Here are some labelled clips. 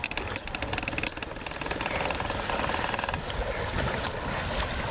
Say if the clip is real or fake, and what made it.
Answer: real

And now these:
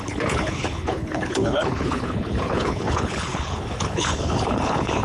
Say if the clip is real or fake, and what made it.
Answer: fake, codec, HILCodec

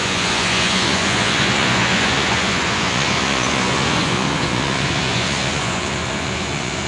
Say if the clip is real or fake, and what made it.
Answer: fake, vocoder, Vocos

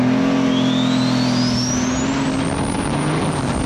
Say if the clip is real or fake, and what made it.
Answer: real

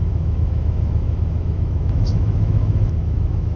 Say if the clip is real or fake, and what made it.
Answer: fake, autoencoder, DAC-VAE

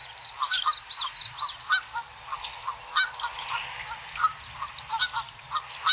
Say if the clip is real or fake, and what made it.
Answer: real